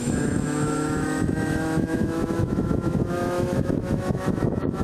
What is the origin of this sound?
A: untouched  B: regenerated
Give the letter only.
B